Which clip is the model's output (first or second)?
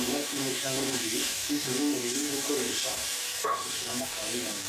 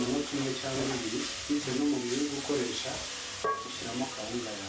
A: first